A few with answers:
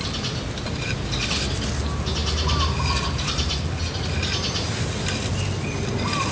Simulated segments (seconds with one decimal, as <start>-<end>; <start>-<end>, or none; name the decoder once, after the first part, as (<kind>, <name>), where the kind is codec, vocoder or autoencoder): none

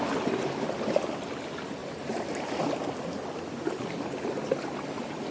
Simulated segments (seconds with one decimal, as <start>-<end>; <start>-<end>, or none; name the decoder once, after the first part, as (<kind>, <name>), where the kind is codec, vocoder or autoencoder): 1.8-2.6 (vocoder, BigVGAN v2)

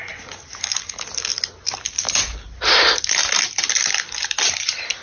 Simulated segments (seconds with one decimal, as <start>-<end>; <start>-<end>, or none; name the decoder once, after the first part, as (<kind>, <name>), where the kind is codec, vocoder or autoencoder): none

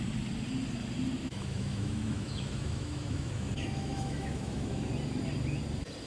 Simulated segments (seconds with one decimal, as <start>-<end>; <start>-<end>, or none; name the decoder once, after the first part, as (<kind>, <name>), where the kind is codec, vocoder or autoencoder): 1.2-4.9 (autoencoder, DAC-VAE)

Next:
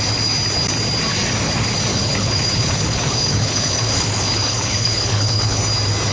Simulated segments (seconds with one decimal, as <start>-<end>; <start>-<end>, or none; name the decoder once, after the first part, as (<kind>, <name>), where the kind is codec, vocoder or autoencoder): 1.9-5.6 (codec, HILCodec)

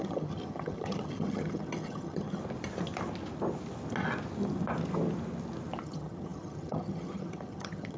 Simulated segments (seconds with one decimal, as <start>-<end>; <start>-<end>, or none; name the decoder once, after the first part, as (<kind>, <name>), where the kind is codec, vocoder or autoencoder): 0.0-2.4 (vocoder, HiFi-GAN); 5.8-8.0

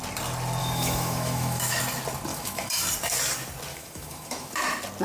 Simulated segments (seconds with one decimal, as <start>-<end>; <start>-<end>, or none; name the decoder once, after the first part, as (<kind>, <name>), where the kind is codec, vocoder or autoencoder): 0.6-1.8 (autoencoder, DAC-VAE); 2.3-2.8; 3.7-4.5